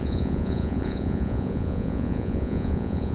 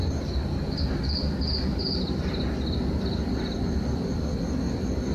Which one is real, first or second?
second